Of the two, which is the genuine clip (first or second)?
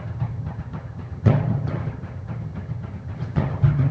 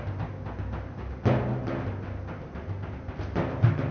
second